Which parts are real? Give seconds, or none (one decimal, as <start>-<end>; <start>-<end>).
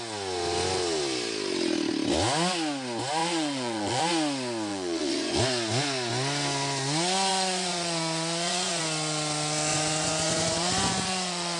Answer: 0.0-3.2; 4.0-4.7; 5.4-7.3; 8.8-9.7